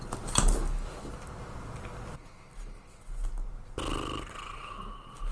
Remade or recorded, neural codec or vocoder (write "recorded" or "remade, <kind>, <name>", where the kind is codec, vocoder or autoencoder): recorded